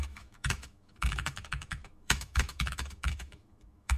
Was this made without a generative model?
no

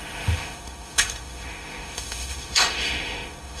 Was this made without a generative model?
no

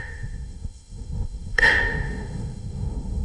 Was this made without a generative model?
no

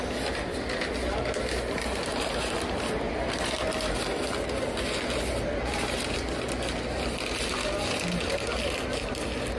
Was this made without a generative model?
yes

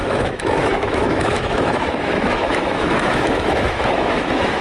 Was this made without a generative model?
no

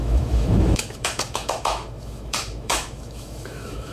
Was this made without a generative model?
no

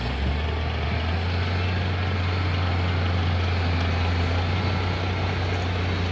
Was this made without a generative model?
yes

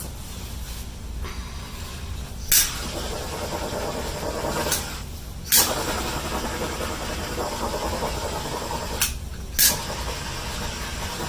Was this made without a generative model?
yes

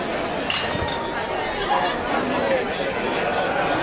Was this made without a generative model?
yes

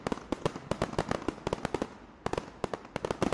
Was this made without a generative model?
yes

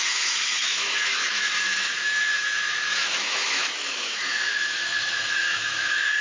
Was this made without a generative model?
no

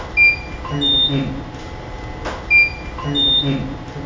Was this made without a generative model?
yes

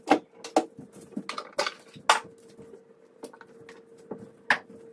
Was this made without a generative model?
yes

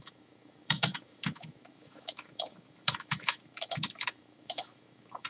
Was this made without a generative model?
no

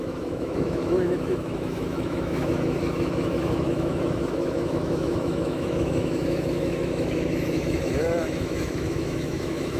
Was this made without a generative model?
no